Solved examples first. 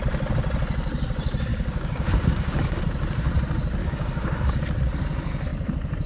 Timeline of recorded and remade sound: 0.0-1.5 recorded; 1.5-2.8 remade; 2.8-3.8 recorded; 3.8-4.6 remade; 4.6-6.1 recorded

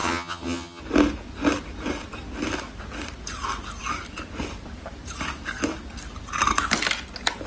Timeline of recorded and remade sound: 0.0-0.8 remade; 0.8-7.5 recorded

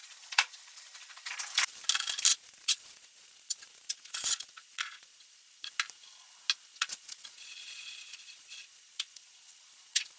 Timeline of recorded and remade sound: 0.0-1.4 remade; 1.4-2.3 recorded; 2.3-5.7 remade; 5.7-6.7 recorded; 6.7-10.2 remade

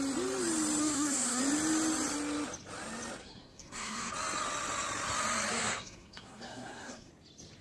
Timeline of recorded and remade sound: 0.0-0.8 recorded; 0.8-1.4 remade; 1.4-3.2 recorded; 3.2-4.1 remade; 4.1-5.5 recorded; 5.5-7.1 remade; 7.1-7.6 recorded

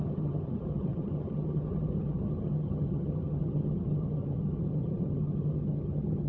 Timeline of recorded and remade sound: 0.0-6.3 remade